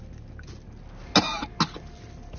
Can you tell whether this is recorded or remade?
recorded